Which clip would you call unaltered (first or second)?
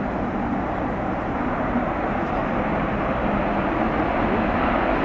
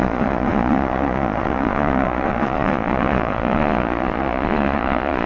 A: first